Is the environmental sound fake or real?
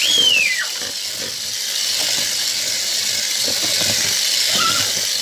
real